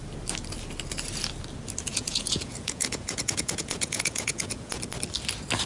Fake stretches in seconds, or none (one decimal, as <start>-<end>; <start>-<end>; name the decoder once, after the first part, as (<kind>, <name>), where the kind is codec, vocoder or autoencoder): 1.9-4.8 (vocoder, Vocos)